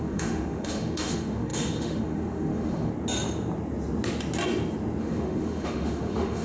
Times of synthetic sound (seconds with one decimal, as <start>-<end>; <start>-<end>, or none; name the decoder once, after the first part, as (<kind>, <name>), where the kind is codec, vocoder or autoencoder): 0.0-2.9 (autoencoder, DAC-VAE); 5.0-6.4